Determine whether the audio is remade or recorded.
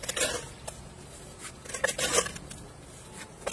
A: recorded